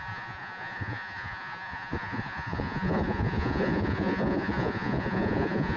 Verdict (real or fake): fake